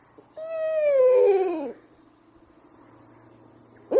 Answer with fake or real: real